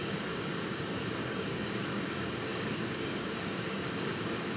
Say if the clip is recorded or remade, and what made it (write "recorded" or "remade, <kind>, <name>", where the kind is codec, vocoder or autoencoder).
remade, codec, DAC